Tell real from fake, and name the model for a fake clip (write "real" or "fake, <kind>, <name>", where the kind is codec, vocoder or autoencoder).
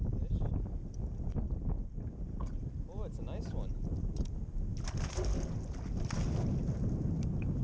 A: real